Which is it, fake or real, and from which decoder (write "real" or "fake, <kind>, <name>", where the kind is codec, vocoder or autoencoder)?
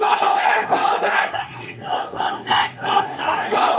fake, codec, SNAC